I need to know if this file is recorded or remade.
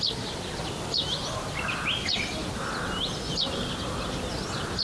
recorded